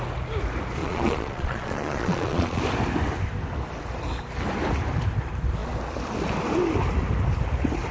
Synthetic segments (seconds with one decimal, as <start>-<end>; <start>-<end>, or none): 0.8-2.6